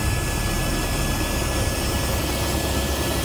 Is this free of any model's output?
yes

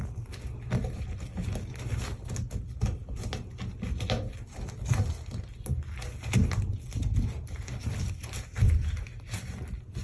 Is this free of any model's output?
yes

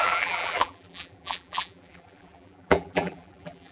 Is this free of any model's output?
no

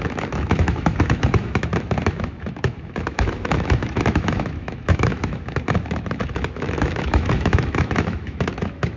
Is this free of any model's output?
no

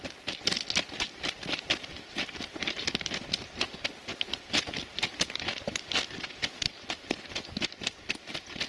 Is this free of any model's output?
yes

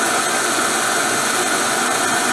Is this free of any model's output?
no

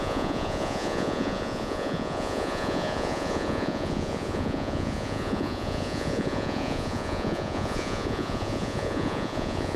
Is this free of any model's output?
no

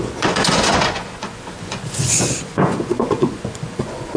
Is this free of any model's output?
no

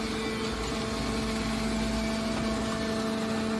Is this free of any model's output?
yes